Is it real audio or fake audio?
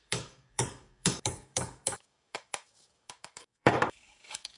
fake